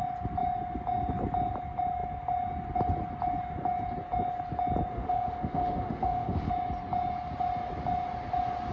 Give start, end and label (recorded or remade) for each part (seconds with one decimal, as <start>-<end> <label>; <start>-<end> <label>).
0.0-4.9 recorded; 4.9-6.5 remade; 6.5-8.7 recorded